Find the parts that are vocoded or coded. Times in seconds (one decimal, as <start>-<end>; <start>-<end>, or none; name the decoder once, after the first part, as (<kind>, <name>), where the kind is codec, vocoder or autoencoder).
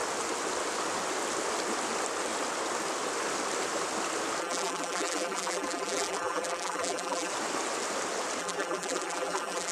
4.4-7.3 (vocoder, BigVGAN v2); 8.4-9.7